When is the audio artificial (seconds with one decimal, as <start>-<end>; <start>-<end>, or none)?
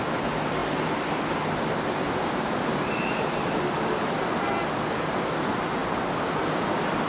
none